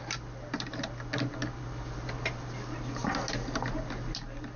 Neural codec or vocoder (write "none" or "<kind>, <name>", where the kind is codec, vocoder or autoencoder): none